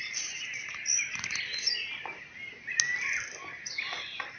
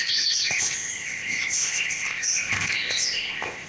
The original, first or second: first